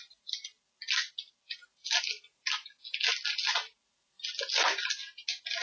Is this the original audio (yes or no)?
yes